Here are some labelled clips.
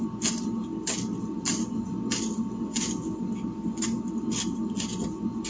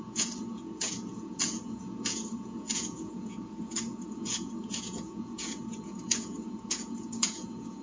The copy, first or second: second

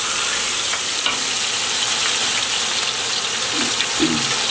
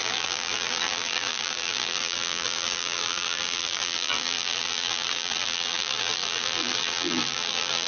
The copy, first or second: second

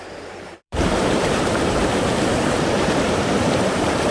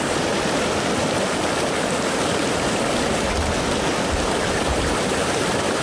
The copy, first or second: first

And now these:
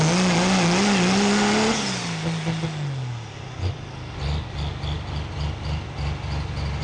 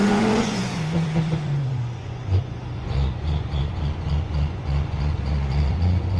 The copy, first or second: second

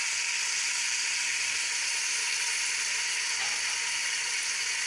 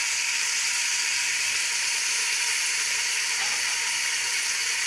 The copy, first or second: second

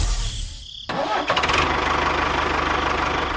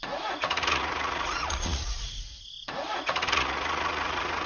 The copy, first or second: second